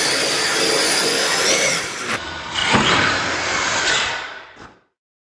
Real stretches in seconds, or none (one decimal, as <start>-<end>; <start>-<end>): 0.0-0.8; 1.4-5.3